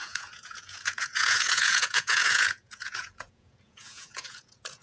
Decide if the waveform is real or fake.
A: fake